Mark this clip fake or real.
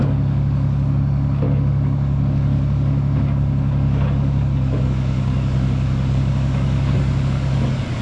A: fake